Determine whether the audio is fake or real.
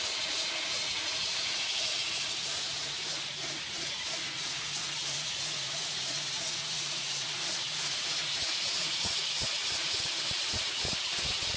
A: fake